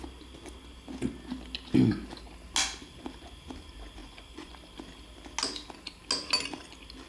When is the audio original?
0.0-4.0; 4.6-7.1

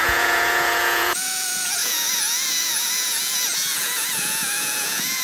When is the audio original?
none

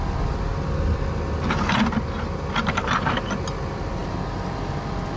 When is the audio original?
0.0-5.2

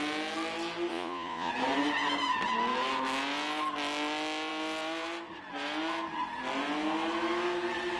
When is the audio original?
0.0-0.9; 1.5-8.0

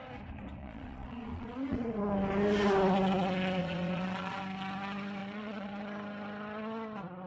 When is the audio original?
0.0-0.6; 2.0-3.6; 4.4-5.2; 5.8-7.3

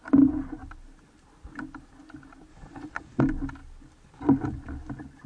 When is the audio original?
0.0-2.5; 3.2-5.3

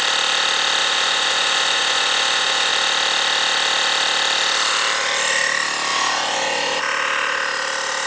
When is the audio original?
0.0-0.8; 2.7-5.9; 6.8-8.1